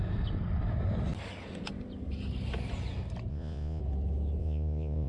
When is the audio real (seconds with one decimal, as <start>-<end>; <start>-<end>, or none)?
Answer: 0.0-3.3; 3.8-4.4